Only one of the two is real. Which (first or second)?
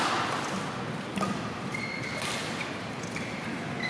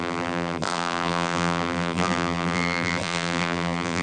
first